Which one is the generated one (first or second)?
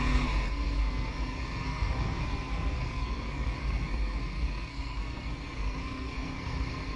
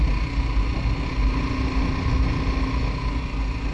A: first